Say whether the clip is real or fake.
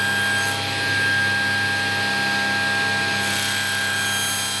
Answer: real